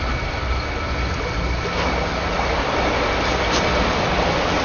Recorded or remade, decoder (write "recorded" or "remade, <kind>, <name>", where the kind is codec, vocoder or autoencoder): recorded